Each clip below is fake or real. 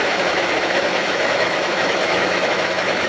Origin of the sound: fake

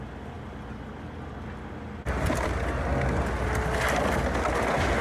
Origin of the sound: real